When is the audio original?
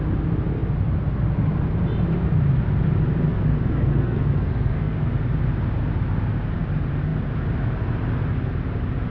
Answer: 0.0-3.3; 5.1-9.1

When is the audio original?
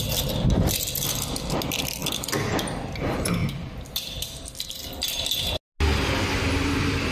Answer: 0.0-7.1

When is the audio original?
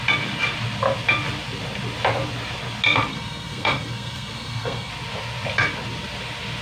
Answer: 0.0-3.1; 4.9-6.6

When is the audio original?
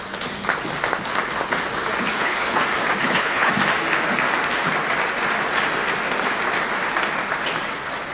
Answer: 0.0-2.1; 2.6-3.0; 3.5-8.1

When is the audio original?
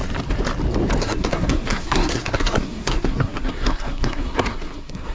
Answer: 0.0-1.0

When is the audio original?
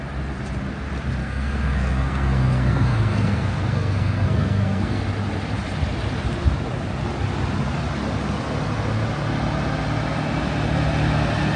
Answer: 0.0-1.2; 5.0-11.6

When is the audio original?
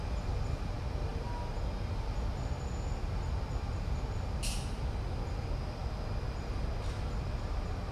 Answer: 0.0-7.9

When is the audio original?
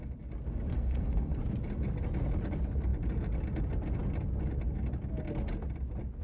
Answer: 0.0-0.7; 1.4-6.2